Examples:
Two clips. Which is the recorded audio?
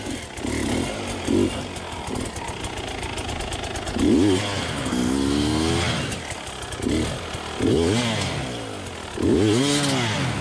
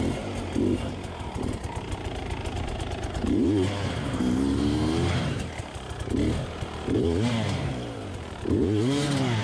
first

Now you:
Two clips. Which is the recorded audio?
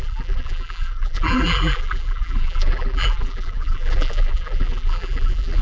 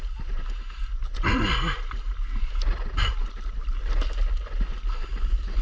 second